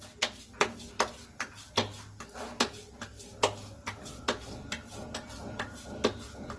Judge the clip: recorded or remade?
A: recorded